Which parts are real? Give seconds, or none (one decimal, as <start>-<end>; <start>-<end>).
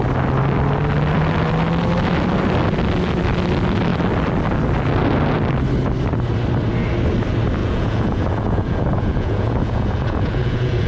0.0-7.6